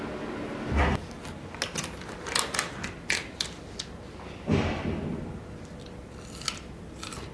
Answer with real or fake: real